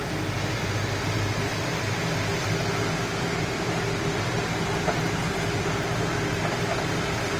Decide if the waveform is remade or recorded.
recorded